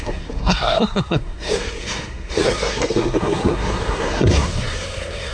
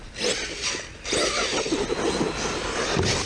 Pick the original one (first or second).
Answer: second